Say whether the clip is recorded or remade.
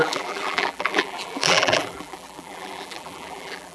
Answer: remade